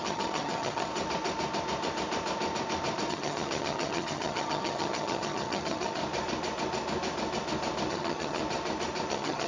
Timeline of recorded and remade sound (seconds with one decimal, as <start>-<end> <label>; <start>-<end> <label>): 0.0-0.9 remade; 0.9-3.1 recorded; 3.1-6.0 remade; 6.0-7.9 recorded; 7.9-8.4 remade; 8.4-9.1 recorded; 9.1-9.5 remade